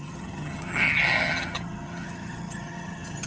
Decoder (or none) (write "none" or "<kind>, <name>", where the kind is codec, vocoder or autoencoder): vocoder, HiFi-GAN